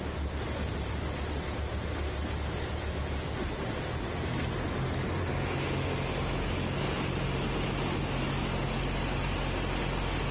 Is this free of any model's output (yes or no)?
yes